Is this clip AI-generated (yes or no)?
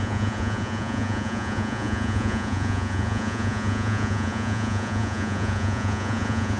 yes